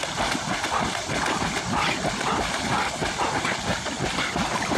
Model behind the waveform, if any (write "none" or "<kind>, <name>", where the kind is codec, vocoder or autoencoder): none